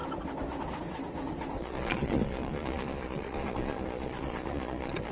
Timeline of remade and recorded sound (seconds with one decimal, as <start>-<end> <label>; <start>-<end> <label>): 0.0-1.6 recorded; 1.6-5.1 remade